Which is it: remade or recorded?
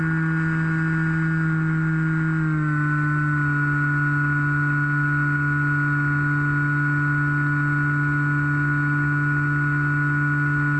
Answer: recorded